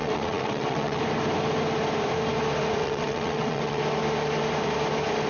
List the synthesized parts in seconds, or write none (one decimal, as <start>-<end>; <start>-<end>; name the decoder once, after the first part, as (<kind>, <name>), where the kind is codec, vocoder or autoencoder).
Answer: 0.0-1.0 (vocoder, WaveNeXt); 2.8-3.8